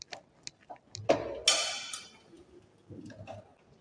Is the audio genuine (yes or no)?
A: yes